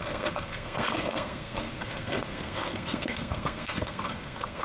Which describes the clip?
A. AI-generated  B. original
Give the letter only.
A